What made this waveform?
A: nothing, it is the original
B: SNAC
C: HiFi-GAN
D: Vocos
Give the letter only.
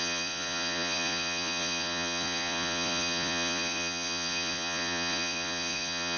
D